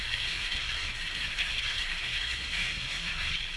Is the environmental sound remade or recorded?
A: remade